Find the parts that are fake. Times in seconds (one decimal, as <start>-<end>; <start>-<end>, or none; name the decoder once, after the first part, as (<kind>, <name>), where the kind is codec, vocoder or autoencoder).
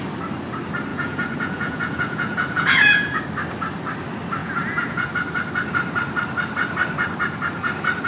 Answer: 0.9-3.2 (vocoder, Vocos); 4.4-5.1